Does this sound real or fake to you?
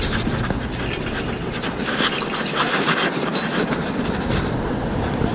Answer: real